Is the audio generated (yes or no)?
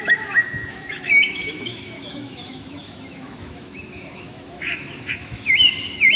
yes